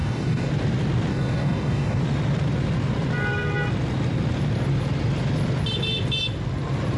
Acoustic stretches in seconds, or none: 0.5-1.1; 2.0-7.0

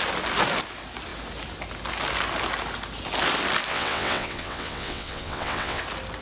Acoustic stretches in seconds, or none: 0.0-3.7; 5.8-6.2

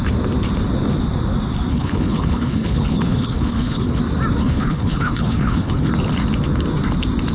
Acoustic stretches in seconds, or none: 0.0-1.7; 4.0-4.4; 5.9-7.3

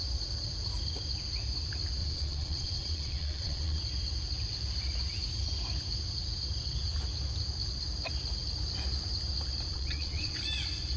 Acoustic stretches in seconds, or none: 0.0-2.0; 3.8-9.7; 10.4-11.0

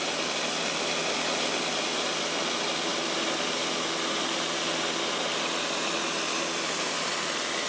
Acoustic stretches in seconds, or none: 0.0-7.7